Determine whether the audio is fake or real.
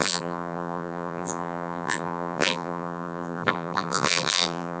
fake